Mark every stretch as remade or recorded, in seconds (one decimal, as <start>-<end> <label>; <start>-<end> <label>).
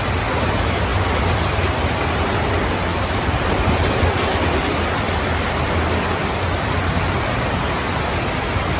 0.0-0.9 recorded; 0.9-6.0 remade; 6.0-8.8 recorded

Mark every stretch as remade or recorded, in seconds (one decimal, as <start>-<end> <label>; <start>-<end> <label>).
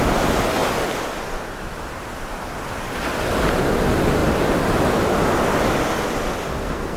0.0-6.4 recorded; 6.4-7.0 remade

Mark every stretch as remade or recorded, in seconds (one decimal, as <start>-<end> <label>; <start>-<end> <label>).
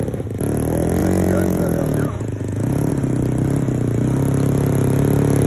0.0-1.0 recorded; 1.0-2.9 remade; 2.9-5.5 recorded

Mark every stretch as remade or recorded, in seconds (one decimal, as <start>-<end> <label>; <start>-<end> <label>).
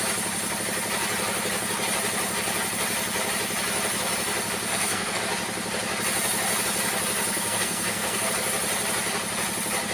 0.0-4.7 recorded; 4.7-5.2 remade; 5.2-7.3 recorded; 7.3-8.3 remade; 8.3-9.9 recorded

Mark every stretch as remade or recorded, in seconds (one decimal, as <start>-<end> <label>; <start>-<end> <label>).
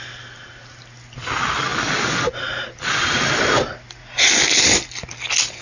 0.0-5.6 recorded